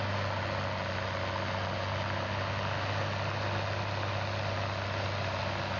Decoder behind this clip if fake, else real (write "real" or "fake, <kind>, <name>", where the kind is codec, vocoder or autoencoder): real